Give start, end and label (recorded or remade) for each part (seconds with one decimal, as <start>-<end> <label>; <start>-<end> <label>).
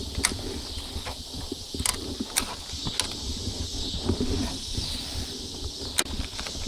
0.0-6.7 recorded